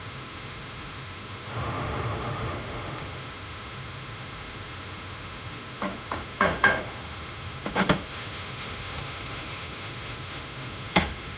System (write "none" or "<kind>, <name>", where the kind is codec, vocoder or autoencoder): autoencoder, DAC-VAE